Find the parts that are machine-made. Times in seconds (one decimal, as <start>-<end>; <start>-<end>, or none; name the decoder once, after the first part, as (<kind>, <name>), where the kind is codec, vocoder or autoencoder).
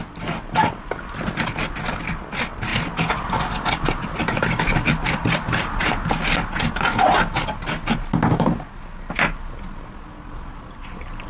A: none